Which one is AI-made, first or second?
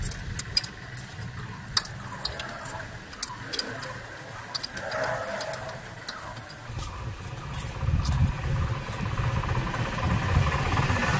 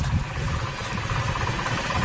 second